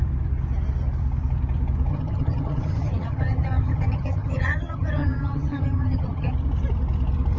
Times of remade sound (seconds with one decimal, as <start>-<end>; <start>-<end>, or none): 1.9-6.3